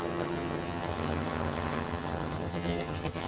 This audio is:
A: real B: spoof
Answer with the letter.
B